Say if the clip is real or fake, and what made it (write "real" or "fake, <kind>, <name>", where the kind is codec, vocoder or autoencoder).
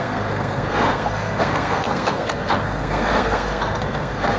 fake, codec, SNAC